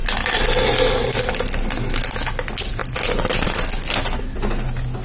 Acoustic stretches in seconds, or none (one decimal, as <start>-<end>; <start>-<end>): 0.0-5.0